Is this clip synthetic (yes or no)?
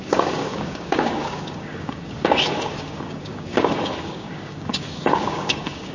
yes